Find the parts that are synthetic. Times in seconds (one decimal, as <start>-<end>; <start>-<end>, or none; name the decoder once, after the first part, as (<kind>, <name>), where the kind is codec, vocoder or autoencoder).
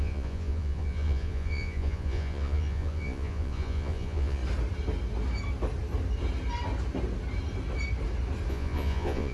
0.0-4.4 (vocoder, Vocos); 8.5-9.3